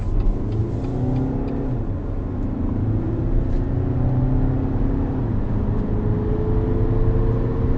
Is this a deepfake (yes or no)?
no